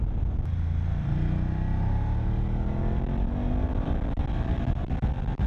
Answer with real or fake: real